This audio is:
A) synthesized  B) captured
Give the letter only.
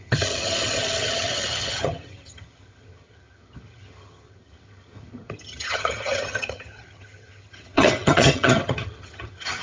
A